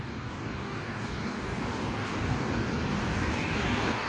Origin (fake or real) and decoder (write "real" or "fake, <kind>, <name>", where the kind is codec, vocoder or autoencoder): fake, codec, DAC